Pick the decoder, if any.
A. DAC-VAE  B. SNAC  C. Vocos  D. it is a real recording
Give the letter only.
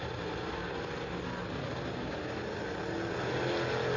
D